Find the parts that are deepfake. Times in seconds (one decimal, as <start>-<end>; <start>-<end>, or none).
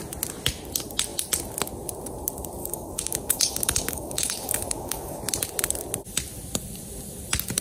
2.6-5.2